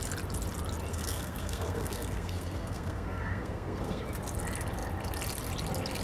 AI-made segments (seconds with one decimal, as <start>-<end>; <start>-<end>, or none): 0.9-4.0